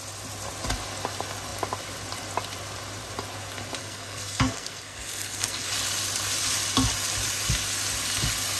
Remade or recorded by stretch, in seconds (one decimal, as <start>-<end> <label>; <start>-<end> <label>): 0.0-3.8 recorded; 3.8-5.7 remade; 5.7-8.6 recorded